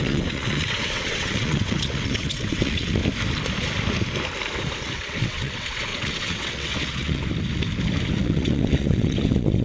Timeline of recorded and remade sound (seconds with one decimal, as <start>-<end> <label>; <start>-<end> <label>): 0.0-3.0 remade; 3.0-4.8 recorded; 4.8-7.2 remade; 7.2-8.2 recorded; 8.2-9.6 remade